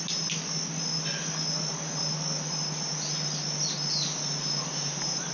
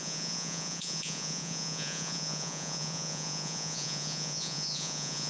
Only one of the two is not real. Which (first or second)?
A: second